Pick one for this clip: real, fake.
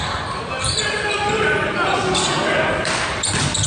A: fake